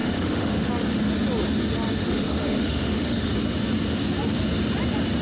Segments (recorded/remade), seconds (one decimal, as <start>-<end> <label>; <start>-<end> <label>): 0.0-0.7 remade; 0.7-2.0 recorded; 2.0-3.3 remade; 3.3-5.2 recorded